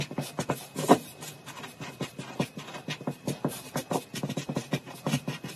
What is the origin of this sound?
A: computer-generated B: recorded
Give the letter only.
A